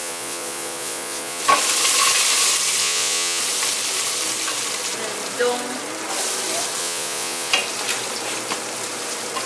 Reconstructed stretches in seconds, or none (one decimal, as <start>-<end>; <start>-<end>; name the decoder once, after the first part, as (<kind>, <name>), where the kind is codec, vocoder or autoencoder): 0.0-1.4 (vocoder, Vocos); 2.8-3.4; 6.8-7.5